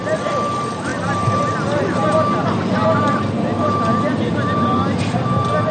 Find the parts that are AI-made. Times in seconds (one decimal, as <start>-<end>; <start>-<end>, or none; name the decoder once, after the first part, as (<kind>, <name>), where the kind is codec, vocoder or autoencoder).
none